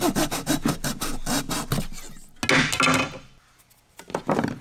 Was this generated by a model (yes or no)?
no